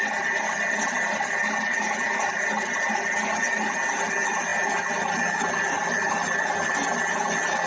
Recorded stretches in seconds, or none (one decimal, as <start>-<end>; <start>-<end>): 0.0-7.7